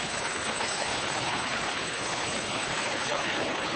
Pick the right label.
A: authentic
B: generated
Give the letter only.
B